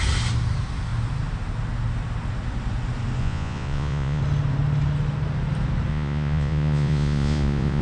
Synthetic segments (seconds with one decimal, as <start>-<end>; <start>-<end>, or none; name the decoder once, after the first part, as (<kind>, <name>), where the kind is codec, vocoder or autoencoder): 3.2-4.2 (vocoder, Vocos); 5.9-7.8